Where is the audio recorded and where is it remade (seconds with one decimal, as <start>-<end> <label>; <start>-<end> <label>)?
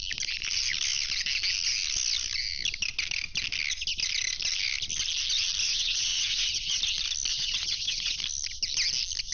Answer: 0.0-5.6 recorded; 5.6-6.8 remade; 6.8-7.3 recorded; 7.3-8.2 remade; 8.2-9.3 recorded